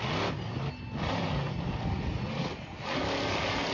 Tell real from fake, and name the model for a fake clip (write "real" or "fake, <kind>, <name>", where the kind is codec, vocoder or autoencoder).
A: real